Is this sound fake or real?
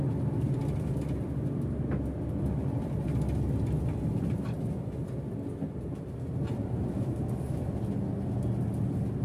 real